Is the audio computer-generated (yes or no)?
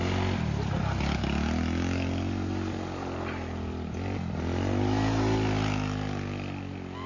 no